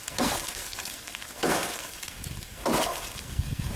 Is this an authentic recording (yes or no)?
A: no